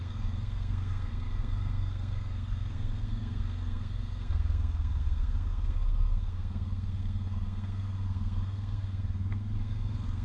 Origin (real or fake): fake